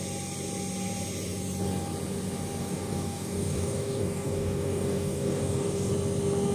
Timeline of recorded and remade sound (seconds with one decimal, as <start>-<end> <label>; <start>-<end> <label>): 0.0-2.6 recorded; 2.6-5.9 remade; 5.9-6.5 recorded